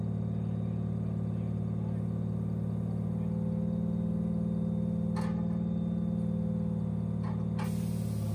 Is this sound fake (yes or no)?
no